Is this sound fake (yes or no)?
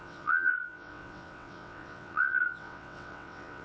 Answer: yes